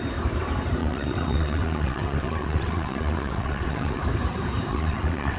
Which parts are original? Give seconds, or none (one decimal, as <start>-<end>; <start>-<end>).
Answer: 0.0-0.8; 4.0-4.7